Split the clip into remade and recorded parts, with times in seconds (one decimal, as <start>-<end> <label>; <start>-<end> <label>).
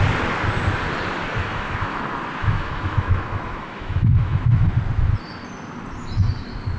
0.0-1.4 recorded; 1.4-2.0 remade; 2.0-2.4 recorded; 2.4-4.7 remade; 4.7-6.8 recorded